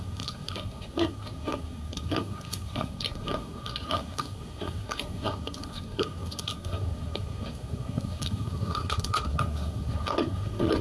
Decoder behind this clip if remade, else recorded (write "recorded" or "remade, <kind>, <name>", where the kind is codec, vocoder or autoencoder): remade, codec, SNAC